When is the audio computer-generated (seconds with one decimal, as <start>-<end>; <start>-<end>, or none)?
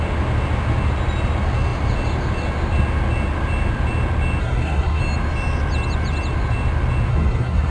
4.4-5.0; 7.1-7.7